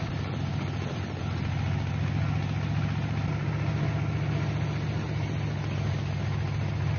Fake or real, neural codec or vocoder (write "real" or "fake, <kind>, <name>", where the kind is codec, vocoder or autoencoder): real